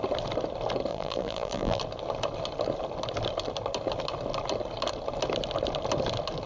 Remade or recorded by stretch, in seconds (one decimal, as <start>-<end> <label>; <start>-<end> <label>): 0.0-0.9 recorded; 0.9-1.8 remade; 1.8-6.5 recorded